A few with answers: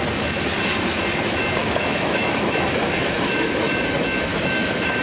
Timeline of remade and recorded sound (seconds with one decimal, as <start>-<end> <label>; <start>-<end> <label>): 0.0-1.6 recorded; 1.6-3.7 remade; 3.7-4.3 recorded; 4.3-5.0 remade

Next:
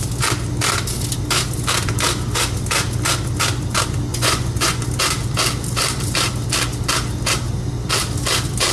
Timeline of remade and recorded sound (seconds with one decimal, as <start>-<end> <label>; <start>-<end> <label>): 0.0-4.1 recorded; 4.1-4.8 remade; 4.8-8.7 recorded

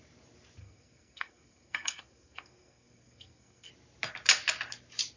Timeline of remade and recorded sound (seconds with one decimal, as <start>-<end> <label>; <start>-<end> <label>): 0.0-0.6 recorded; 0.6-3.7 remade; 3.7-5.2 recorded